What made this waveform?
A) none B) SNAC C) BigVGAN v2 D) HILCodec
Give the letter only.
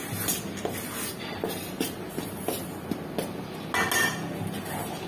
A